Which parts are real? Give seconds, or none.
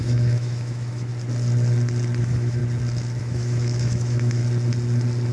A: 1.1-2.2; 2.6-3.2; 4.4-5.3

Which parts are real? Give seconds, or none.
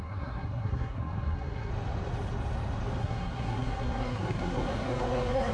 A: 1.7-3.0